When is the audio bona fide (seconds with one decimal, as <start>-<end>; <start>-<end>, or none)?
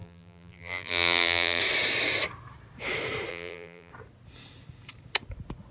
1.6-3.3; 3.9-5.7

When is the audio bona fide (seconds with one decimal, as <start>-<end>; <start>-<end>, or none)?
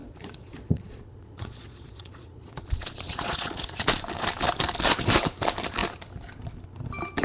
3.9-7.2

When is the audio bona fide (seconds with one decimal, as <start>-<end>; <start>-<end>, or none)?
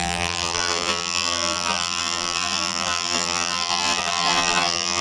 none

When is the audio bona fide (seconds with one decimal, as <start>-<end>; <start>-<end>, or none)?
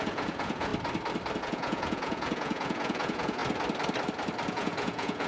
0.7-1.4; 3.4-4.5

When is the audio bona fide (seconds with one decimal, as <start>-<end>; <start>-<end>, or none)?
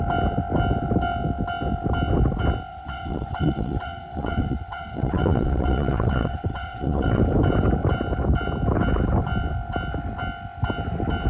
0.0-2.7; 7.2-11.3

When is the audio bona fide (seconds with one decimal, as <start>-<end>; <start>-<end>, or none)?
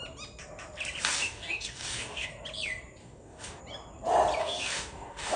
0.0-1.2; 2.3-3.0; 3.6-4.4